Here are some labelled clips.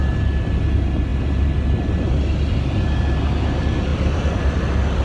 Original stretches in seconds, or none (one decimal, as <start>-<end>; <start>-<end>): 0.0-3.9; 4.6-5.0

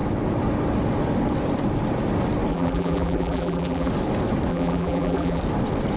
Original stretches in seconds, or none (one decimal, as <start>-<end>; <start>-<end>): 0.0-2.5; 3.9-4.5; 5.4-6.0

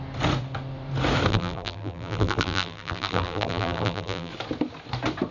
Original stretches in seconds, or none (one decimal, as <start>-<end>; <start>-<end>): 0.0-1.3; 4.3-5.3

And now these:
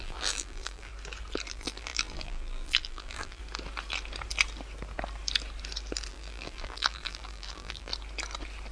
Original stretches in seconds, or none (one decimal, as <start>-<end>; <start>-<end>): 0.9-1.5; 3.4-6.1; 7.9-8.7

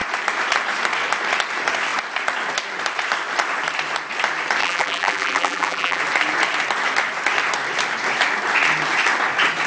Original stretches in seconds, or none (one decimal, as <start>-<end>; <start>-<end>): 0.0-4.6; 6.0-9.7

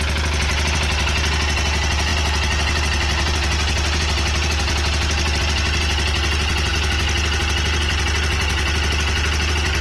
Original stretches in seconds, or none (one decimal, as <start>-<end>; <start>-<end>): 0.0-9.8

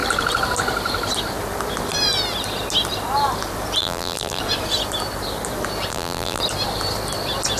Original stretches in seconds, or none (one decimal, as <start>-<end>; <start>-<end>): 0.0-3.8; 4.4-5.9; 6.4-7.6